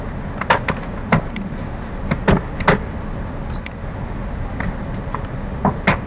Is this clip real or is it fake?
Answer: real